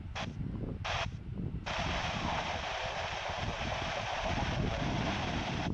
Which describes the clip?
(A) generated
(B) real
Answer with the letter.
A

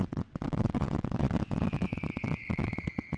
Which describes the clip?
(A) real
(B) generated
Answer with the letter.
B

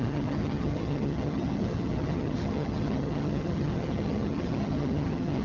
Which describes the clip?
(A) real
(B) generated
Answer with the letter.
B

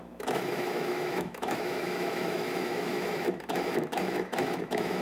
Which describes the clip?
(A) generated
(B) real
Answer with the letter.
A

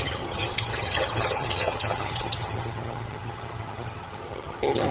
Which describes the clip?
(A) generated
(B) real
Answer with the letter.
A